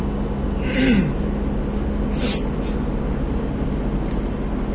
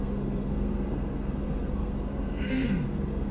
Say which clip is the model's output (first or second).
second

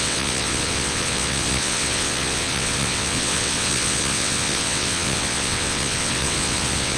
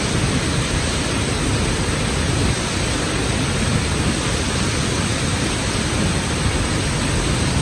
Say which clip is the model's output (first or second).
first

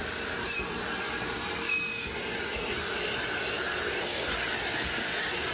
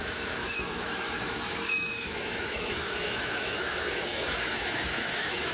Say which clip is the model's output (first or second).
second